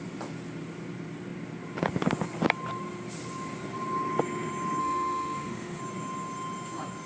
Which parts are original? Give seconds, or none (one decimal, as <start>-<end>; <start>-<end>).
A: 0.0-4.8; 5.8-7.1